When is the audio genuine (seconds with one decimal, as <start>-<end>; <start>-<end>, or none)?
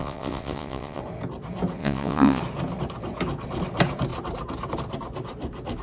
1.0-1.8; 2.4-5.8